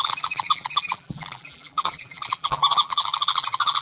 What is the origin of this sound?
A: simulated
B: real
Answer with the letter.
A